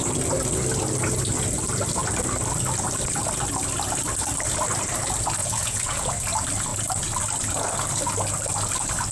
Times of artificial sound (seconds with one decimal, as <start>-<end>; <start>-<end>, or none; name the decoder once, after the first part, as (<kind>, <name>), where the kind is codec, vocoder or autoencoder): 5.4-6.1 (vocoder, Vocos)